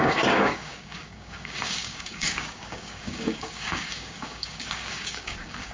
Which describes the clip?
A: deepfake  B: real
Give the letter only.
A